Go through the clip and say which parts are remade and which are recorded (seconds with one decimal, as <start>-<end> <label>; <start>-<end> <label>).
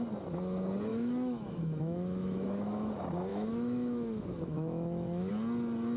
0.0-0.9 recorded; 0.9-2.9 remade; 2.9-3.3 recorded; 3.3-5.3 remade; 5.3-6.0 recorded